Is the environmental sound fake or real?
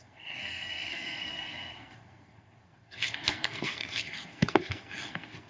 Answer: fake